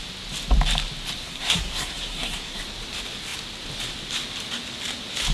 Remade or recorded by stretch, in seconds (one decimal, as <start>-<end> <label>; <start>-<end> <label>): 0.0-1.2 recorded; 1.2-2.6 remade; 2.6-5.3 recorded